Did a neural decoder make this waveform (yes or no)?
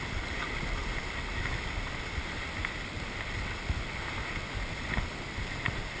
no